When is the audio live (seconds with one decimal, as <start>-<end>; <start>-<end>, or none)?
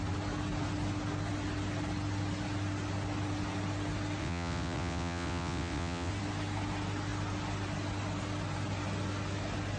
0.0-4.2; 6.1-9.8